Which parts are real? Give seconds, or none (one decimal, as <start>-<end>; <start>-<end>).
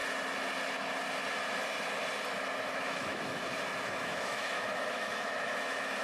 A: 0.0-2.7; 3.4-4.0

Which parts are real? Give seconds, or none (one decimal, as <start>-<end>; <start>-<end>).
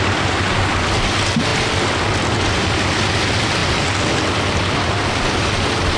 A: 0.0-6.0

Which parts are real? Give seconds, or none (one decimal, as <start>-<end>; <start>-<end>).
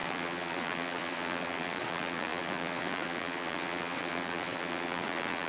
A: none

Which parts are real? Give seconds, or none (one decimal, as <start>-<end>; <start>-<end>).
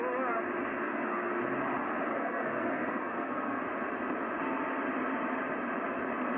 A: 0.0-0.7; 1.4-2.1; 3.6-6.4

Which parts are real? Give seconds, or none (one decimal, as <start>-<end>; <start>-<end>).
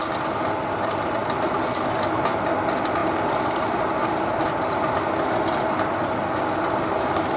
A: 0.0-7.4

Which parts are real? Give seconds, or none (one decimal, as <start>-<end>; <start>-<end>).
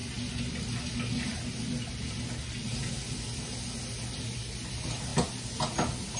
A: 0.0-6.2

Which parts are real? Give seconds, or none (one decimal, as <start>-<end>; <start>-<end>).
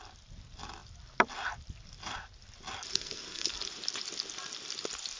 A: 0.0-2.9; 3.5-5.2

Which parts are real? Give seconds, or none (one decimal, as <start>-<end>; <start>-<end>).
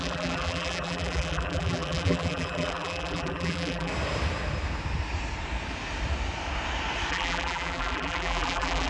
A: 3.9-7.1